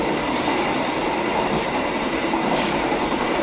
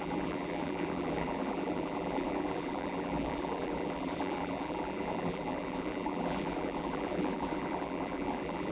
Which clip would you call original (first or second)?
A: first